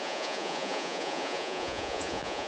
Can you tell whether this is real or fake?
fake